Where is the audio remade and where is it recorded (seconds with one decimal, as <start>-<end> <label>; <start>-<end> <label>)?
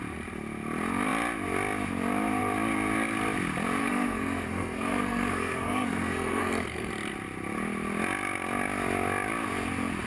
0.0-3.8 recorded; 3.8-6.9 remade; 6.9-10.1 recorded